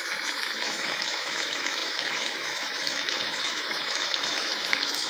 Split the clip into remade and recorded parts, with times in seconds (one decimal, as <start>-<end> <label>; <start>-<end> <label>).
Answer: 0.0-5.1 remade